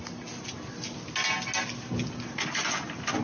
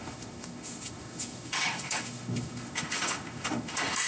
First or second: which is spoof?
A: second